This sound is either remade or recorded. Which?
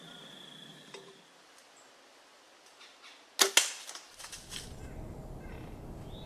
recorded